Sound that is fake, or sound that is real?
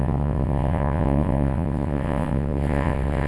fake